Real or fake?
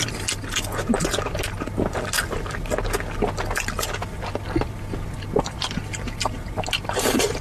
real